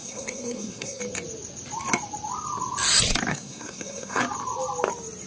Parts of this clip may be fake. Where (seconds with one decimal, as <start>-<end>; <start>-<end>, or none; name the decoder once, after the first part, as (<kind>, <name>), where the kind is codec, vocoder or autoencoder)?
0.0-1.0 (codec, SNAC); 3.3-4.2